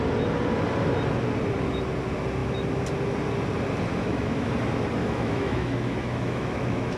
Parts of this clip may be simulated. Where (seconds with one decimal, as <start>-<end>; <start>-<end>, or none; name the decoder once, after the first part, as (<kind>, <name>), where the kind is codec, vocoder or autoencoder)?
3.9-4.5 (autoencoder, DAC-VAE); 5.0-7.0